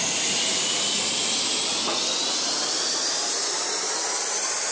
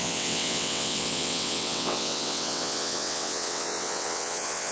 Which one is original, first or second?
first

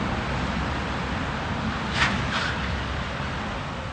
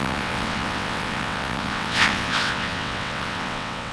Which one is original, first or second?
first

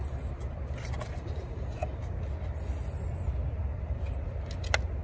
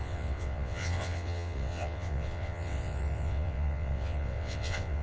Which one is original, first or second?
first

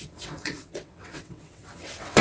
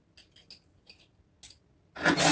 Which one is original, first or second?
second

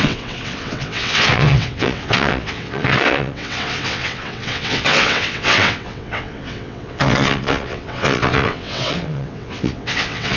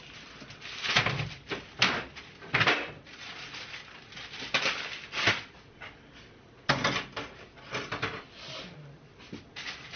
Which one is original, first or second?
second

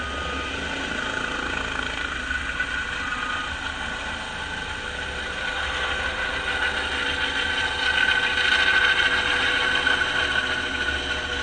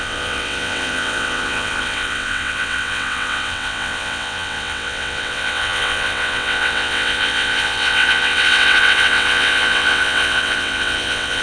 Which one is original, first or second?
first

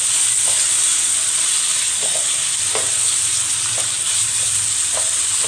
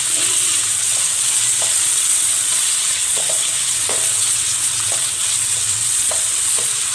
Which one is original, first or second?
first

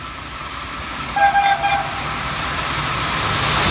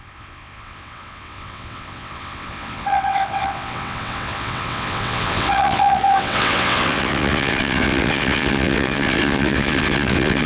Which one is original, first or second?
first